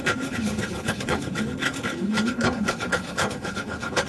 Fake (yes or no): yes